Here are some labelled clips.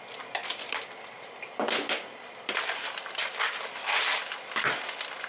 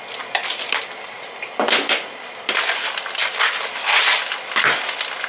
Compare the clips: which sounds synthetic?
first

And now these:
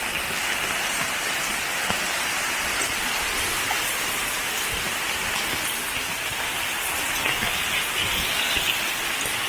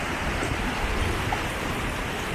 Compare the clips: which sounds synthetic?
second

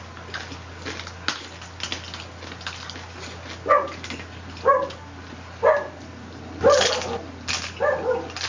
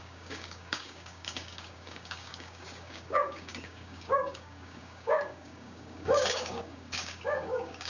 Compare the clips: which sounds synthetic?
second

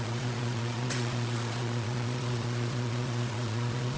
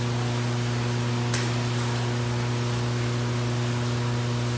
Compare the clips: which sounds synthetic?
first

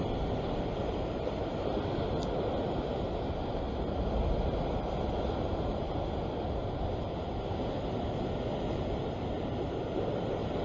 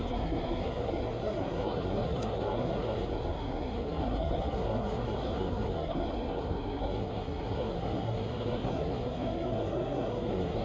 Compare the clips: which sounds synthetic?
second